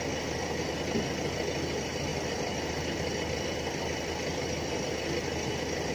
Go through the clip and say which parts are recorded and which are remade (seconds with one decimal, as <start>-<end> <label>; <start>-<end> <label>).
0.0-5.9 recorded